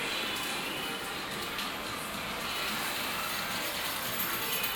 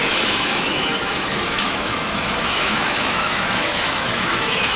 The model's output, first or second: second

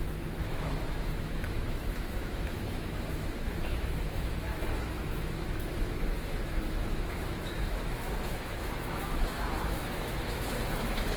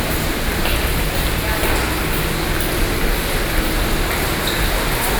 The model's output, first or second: first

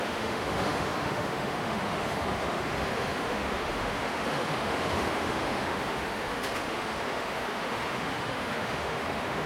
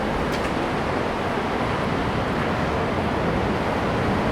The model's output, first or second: first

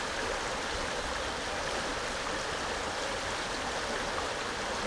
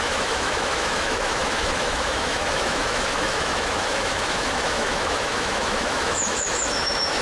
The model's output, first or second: second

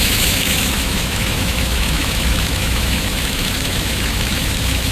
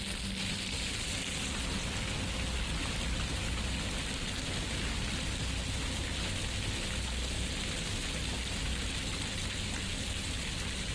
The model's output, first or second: first